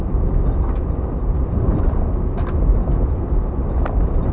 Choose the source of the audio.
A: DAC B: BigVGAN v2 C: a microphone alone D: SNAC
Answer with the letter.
B